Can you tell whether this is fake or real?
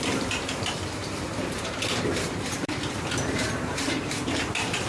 fake